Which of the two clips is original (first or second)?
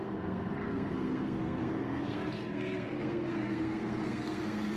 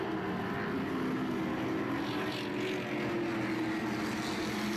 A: second